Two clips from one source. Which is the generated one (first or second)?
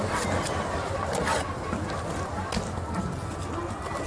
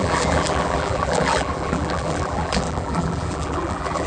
second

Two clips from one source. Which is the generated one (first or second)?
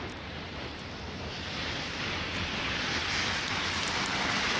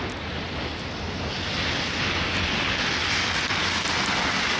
first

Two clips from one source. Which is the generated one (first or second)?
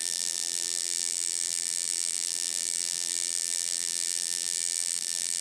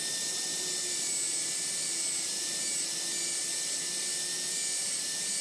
first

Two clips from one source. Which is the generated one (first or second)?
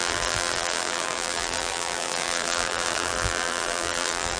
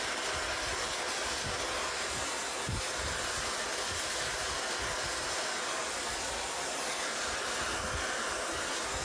first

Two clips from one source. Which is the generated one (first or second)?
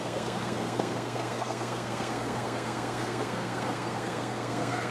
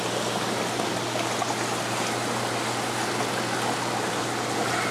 first